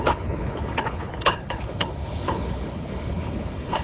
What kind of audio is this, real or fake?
fake